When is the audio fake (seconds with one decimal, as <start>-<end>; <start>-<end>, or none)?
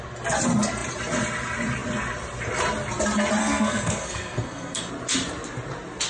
3.4-4.9